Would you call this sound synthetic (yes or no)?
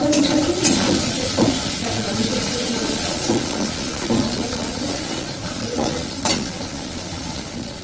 yes